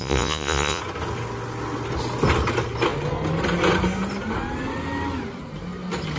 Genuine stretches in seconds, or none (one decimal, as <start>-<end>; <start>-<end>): 0.8-6.2